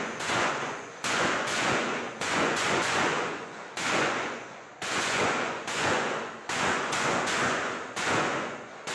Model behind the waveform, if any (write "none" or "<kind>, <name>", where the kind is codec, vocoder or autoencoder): vocoder, Vocos